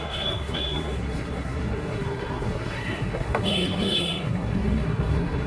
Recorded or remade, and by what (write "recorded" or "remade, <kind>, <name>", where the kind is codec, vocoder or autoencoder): remade, codec, SNAC